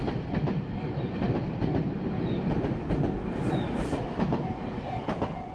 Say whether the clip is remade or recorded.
recorded